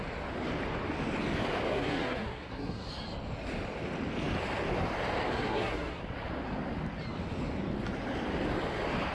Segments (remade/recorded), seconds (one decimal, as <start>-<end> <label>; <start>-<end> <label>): 0.0-1.7 recorded; 1.7-2.9 remade; 2.9-5.3 recorded; 5.3-6.0 remade; 6.0-9.1 recorded